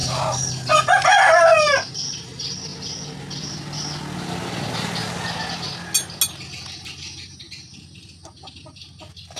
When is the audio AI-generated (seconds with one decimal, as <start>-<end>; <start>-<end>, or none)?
none